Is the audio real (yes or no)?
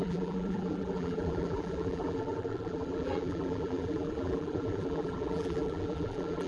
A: no